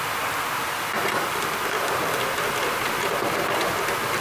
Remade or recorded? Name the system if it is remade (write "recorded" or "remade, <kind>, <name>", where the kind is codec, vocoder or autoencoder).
recorded